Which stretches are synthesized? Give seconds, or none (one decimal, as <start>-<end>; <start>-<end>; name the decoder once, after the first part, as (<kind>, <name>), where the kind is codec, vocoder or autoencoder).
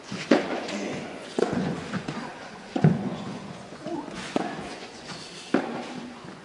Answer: 0.0-5.2 (vocoder, Vocos); 6.0-6.4